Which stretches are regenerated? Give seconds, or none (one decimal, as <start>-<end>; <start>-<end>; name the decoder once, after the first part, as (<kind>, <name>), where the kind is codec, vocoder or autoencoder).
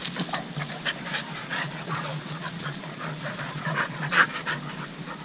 1.4-4.5 (vocoder, Vocos)